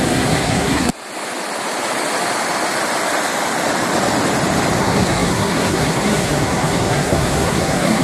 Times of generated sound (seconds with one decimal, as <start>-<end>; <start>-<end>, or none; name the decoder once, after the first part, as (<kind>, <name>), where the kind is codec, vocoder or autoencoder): 0.0-0.9 (codec, SNAC); 4.8-8.0